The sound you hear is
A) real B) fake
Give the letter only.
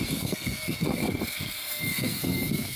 B